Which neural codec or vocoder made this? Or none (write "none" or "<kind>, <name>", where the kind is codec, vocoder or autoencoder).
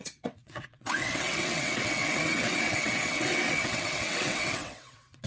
vocoder, WaveNeXt